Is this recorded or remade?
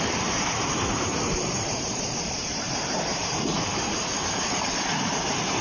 remade